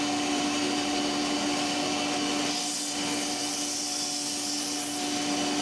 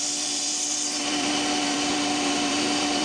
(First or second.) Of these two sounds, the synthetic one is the second